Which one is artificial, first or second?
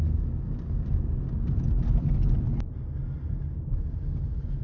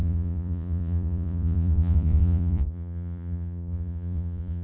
second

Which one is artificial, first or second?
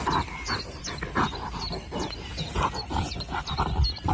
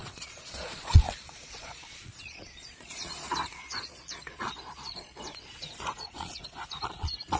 second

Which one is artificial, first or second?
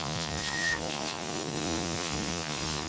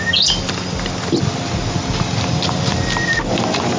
first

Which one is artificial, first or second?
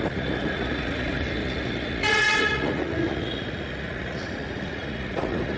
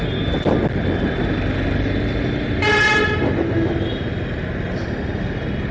first